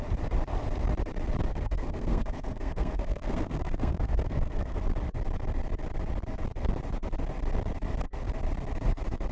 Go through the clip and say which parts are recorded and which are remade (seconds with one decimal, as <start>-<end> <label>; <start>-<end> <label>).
0.0-1.5 recorded; 1.5-4.8 remade; 4.8-9.3 recorded